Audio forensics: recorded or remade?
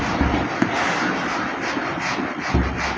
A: recorded